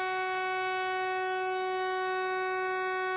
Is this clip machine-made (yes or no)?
no